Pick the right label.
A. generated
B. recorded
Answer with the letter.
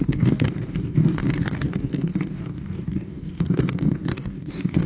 A